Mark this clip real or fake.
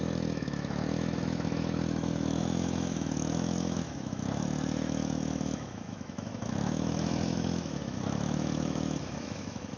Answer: fake